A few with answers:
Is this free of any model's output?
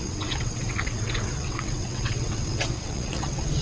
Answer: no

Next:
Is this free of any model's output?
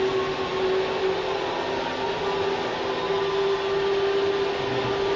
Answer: yes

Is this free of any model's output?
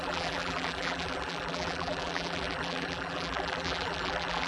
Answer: no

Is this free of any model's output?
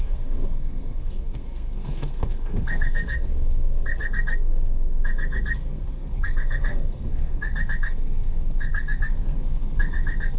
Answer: no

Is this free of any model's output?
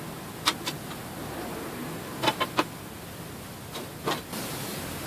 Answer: yes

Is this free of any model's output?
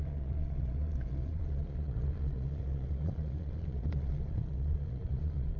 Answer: no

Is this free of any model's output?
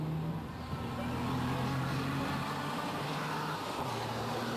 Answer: yes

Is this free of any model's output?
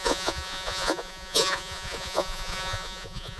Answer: no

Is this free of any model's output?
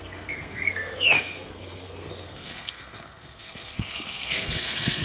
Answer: no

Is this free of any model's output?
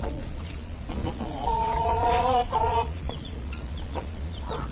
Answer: no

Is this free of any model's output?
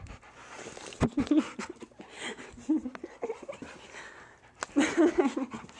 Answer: yes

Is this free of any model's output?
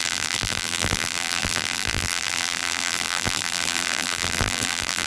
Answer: no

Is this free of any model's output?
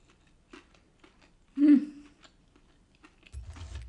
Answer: yes